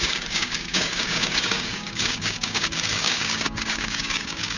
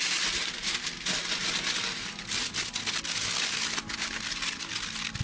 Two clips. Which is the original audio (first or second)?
second